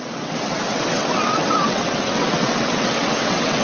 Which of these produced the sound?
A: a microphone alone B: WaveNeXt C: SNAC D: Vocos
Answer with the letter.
B